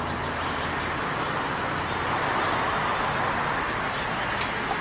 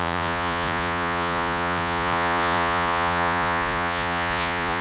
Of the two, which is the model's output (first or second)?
second